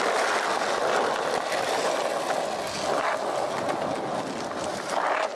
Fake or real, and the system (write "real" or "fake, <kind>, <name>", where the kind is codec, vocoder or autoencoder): real